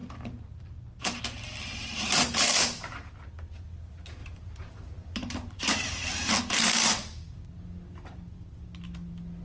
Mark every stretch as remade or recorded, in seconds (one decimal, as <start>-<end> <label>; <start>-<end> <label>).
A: 0.0-1.2 remade; 1.2-1.8 recorded; 1.8-2.5 remade; 2.5-4.2 recorded; 4.2-6.3 remade; 6.3-9.4 recorded